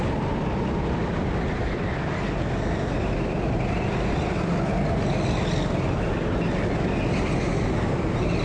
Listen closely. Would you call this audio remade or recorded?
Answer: recorded